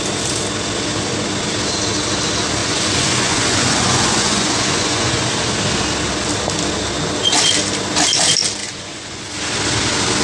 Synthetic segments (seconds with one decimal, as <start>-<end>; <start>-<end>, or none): 2.6-5.3; 8.6-9.2